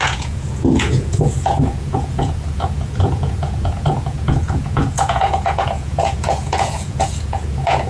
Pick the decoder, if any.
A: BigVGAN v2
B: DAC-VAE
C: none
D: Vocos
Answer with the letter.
D